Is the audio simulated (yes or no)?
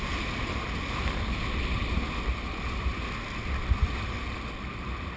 no